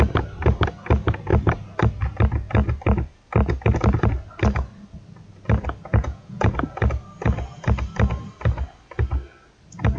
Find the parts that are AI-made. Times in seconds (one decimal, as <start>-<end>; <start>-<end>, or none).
5.9-6.5